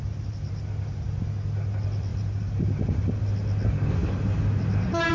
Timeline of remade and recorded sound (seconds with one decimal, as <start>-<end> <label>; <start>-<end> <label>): 0.0-5.1 recorded